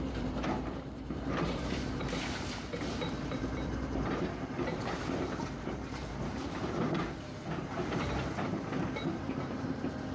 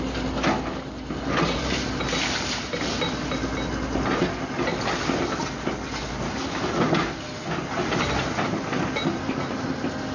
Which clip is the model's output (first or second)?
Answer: first